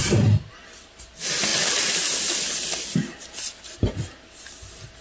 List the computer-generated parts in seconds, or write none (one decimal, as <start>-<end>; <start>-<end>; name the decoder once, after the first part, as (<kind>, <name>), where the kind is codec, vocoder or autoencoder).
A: none